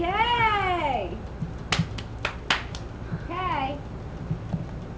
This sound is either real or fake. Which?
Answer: real